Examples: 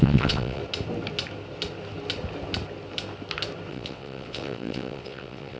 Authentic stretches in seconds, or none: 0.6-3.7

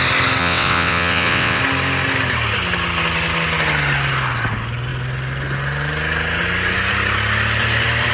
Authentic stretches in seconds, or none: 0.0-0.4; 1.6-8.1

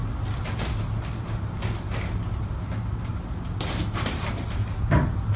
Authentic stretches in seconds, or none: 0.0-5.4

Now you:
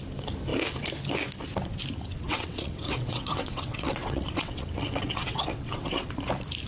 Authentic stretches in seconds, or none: 0.0-2.1; 6.1-6.7

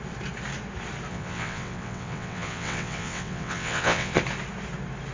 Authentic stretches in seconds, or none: 0.0-1.1; 4.2-5.1

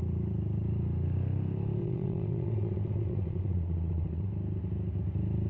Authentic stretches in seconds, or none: 0.0-1.8; 4.3-5.5

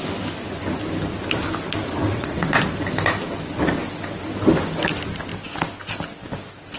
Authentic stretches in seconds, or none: 0.0-2.0; 2.6-6.8

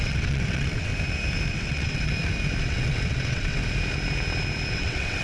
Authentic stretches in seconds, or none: 0.9-1.5; 2.1-2.6; 3.6-4.7